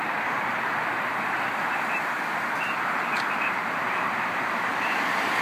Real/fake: fake